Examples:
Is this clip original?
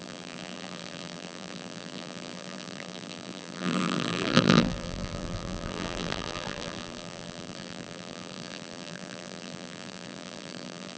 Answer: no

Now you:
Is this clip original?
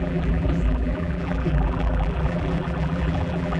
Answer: no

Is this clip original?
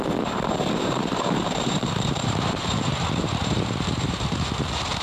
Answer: no